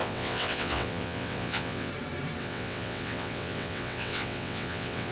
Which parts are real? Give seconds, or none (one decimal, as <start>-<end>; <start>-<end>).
1.9-2.4